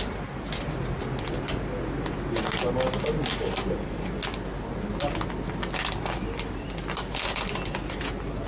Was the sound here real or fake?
real